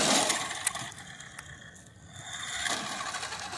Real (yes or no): yes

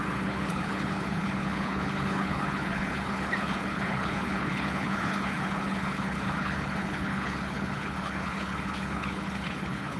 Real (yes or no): no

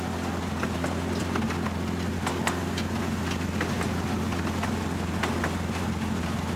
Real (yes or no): yes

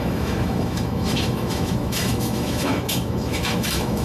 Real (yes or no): no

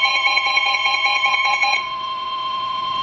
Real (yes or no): no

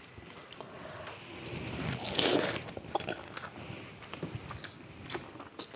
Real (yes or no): yes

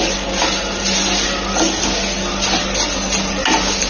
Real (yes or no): yes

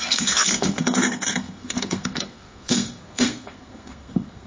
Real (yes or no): no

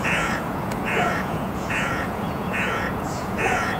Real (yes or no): no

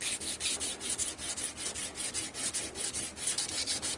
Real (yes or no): yes